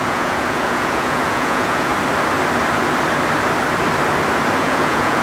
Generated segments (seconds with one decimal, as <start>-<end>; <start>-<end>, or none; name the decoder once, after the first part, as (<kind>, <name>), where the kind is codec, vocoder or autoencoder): 0.0-1.9 (vocoder, Vocos); 4.6-5.2